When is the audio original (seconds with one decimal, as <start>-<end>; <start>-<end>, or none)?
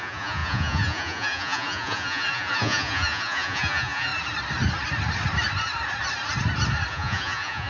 4.1-6.9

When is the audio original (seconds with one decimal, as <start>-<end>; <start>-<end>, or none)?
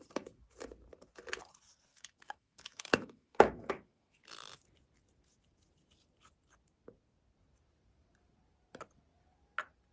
0.0-1.9; 4.2-9.9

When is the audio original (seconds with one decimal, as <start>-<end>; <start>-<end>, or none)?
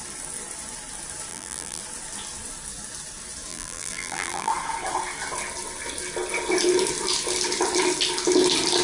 0.0-1.3; 1.8-3.5; 4.5-8.8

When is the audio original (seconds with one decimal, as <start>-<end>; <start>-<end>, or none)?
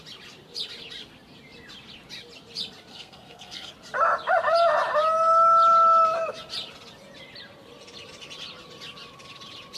0.0-2.9; 3.7-9.8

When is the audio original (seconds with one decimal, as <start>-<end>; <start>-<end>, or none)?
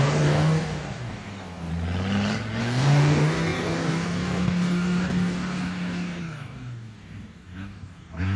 1.7-2.6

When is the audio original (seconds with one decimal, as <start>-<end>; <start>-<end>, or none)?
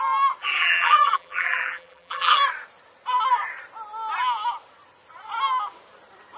0.0-0.4; 2.4-6.4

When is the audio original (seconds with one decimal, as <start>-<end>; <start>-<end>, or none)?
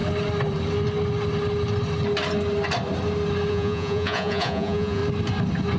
0.0-3.5; 5.0-5.8